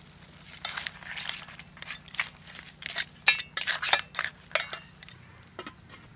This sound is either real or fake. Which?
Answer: real